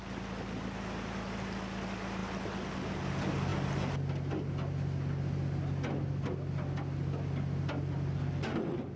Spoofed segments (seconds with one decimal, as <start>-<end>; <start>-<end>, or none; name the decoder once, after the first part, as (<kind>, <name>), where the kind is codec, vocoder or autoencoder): none